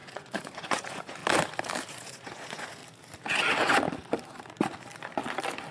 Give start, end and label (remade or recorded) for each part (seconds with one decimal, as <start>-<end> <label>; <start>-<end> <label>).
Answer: 0.0-1.2 remade; 1.2-1.9 recorded; 1.9-2.8 remade; 2.8-5.7 recorded